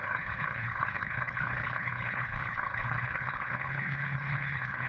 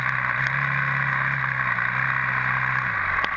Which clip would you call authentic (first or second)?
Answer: second